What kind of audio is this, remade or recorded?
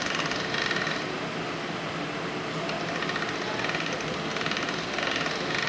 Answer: recorded